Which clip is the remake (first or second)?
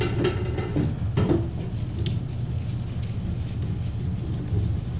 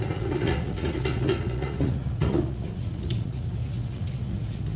second